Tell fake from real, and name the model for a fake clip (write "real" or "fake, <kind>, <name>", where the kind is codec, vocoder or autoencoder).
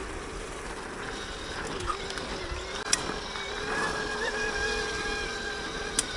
real